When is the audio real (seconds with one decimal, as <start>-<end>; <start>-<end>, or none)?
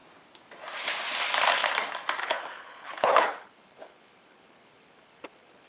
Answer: 0.0-2.2